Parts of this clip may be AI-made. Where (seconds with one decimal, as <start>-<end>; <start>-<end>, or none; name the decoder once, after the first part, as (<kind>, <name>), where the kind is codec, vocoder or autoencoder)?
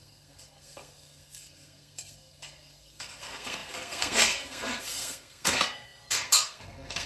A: 0.0-7.1 (codec, SNAC)